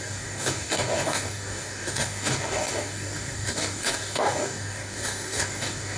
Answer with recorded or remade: remade